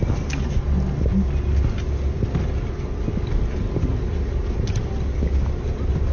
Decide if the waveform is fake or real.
real